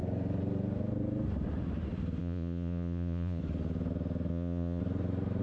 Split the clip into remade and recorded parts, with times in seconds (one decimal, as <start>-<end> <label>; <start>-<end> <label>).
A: 0.0-2.2 recorded; 2.2-3.4 remade; 3.4-4.3 recorded; 4.3-4.8 remade; 4.8-5.4 recorded